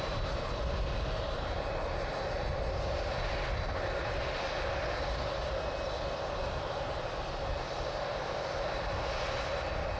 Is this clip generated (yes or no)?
no